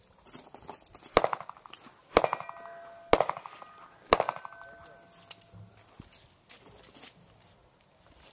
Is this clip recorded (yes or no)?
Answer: yes